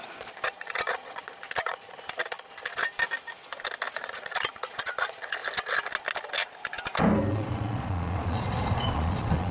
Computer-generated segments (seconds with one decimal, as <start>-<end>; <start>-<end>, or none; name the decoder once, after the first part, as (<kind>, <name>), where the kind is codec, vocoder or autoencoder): 0.0-2.8 (vocoder, Vocos); 3.9-5.4; 7.3-9.5